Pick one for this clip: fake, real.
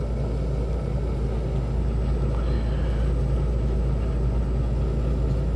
real